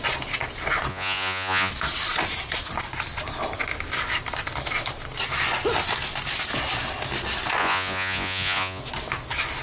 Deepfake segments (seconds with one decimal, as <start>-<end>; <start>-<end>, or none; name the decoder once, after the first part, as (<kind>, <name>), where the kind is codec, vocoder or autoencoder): 0.9-1.7 (vocoder, Vocos); 7.6-8.8